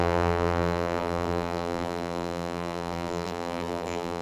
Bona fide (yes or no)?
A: no